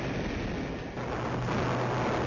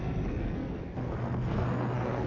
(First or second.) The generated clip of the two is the second